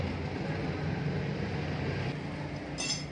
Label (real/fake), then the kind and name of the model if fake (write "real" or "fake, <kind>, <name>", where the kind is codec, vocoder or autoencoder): real